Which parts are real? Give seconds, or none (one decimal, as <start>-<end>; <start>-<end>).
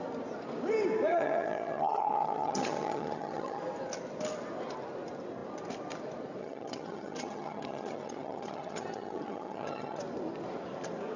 0.0-1.1; 3.6-6.4; 10.0-11.2